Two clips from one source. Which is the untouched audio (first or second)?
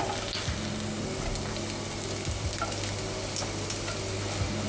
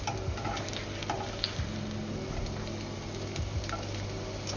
first